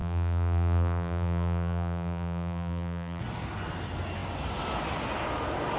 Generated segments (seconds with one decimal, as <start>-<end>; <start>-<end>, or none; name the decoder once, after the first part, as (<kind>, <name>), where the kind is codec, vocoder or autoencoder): 0.0-3.2 (vocoder, BigVGAN v2)